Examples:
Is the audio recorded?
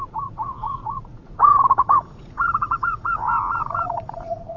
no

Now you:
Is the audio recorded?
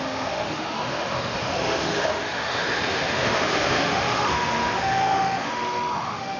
no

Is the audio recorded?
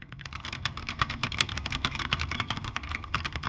no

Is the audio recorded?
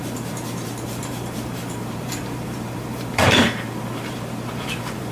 no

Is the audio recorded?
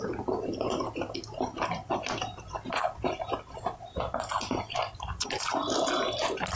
no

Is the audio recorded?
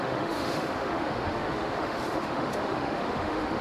no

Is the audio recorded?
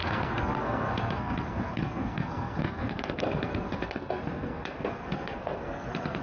no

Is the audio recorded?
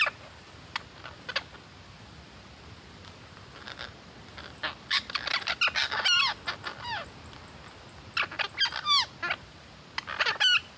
yes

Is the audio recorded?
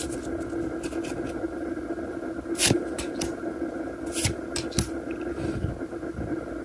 yes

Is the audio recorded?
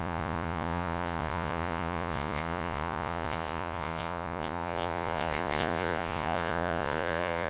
no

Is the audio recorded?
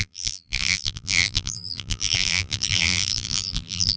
no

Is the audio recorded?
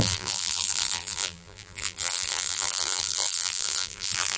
no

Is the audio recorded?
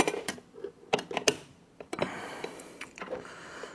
no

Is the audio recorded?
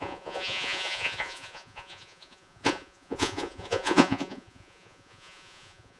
no